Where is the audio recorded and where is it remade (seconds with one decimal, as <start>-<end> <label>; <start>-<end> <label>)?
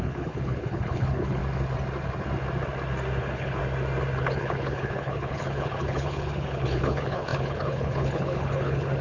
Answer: 0.0-1.4 remade; 1.4-3.2 recorded; 3.2-3.6 remade; 3.6-4.2 recorded; 4.2-9.0 remade